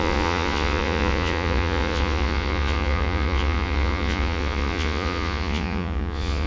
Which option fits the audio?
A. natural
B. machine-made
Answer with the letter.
B